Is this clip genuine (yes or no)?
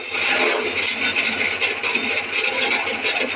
yes